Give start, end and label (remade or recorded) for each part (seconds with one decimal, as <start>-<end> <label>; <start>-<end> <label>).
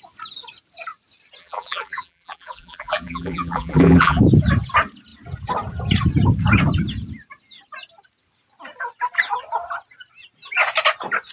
0.0-1.4 recorded; 1.4-4.2 remade; 4.2-11.3 recorded